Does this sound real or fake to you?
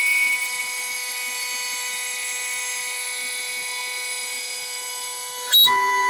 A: real